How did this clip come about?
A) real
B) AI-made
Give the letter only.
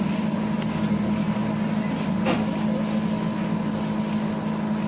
A